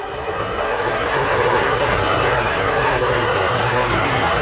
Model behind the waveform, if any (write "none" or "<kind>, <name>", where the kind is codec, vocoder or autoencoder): codec, SNAC